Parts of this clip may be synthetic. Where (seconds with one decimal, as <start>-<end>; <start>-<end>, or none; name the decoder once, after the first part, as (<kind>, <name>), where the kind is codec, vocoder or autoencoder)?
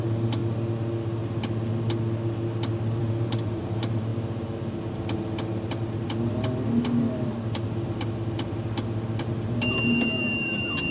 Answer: 0.0-0.4 (vocoder, BigVGAN v2); 3.0-4.1; 9.3-10.9